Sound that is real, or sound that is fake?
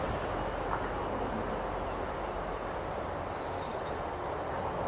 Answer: real